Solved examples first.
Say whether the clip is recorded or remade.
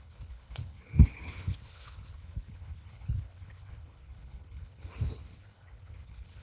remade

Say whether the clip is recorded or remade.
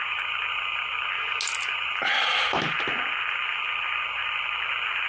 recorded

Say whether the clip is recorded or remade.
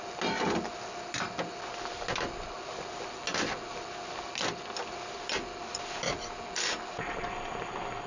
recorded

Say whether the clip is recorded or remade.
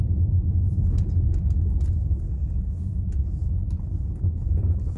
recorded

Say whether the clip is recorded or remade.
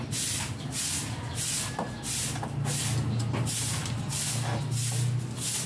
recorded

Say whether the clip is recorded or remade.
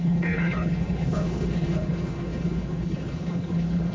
remade